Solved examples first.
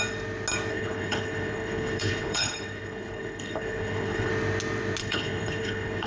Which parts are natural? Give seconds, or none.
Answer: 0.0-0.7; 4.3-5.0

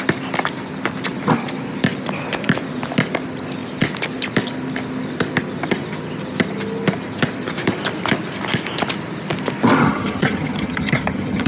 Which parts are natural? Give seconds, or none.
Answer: 0.0-9.8

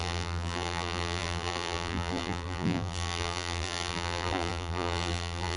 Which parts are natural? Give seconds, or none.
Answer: none

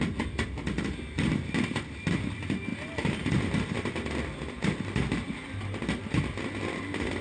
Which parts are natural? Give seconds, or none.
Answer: 0.0-7.2

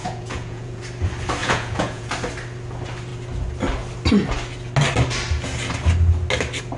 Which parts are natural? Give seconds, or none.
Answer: 0.8-1.4; 2.1-6.8

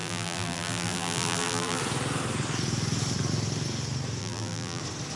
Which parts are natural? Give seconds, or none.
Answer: 1.8-4.2; 4.8-5.2

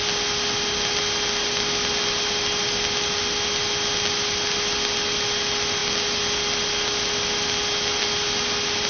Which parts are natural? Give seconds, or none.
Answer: 0.0-8.9